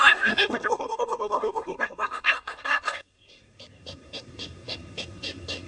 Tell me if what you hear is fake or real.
fake